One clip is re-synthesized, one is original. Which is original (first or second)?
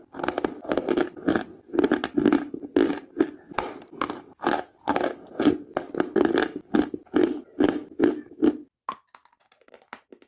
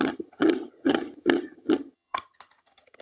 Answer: first